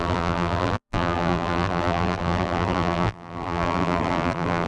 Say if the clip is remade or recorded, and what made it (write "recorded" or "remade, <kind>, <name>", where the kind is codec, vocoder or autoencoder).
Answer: remade, vocoder, BigVGAN v2